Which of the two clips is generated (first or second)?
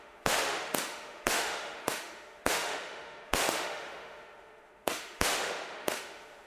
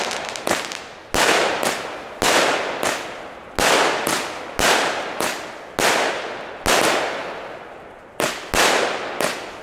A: first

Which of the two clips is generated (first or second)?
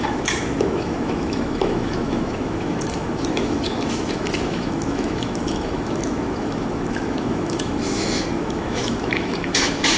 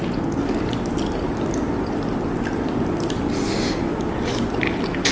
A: first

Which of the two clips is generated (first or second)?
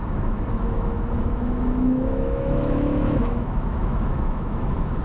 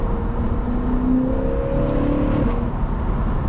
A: first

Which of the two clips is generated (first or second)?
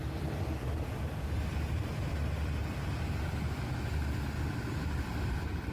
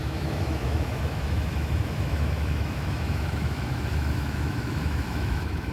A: second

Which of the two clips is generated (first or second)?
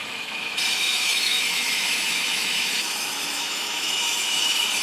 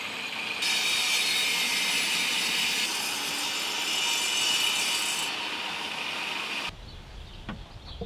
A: first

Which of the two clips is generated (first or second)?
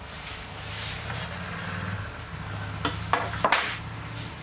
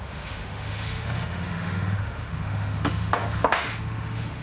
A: second